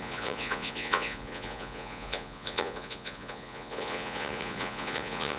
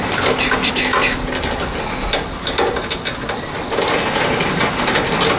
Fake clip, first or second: first